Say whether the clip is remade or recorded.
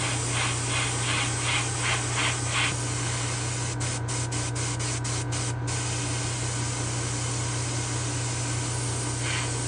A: recorded